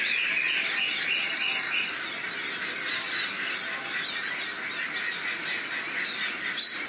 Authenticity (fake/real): real